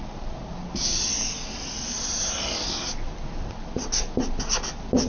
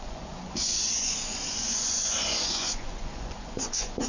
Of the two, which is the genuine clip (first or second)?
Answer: first